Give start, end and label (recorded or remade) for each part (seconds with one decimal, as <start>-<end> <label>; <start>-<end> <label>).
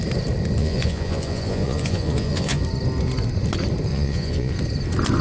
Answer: 0.0-0.6 recorded; 0.6-2.6 remade; 2.6-3.9 recorded; 3.9-4.5 remade; 4.5-5.2 recorded